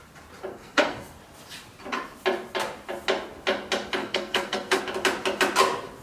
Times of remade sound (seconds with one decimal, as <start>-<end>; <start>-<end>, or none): 0.5-1.2; 4.0-4.8